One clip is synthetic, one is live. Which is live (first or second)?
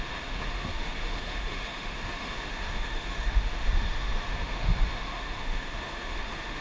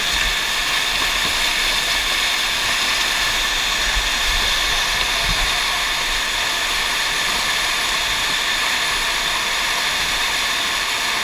second